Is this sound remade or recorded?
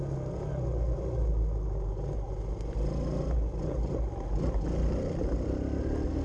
recorded